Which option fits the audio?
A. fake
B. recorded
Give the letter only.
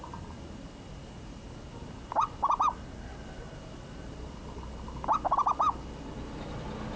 B